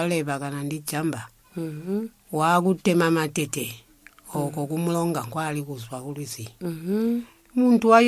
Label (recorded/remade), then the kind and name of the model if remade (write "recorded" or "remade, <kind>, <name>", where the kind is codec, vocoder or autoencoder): recorded